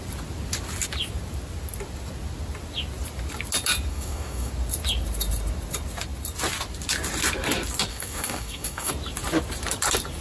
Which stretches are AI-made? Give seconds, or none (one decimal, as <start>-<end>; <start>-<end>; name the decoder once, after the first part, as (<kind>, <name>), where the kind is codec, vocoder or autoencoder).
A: 3.9-4.5 (codec, DAC); 7.9-8.9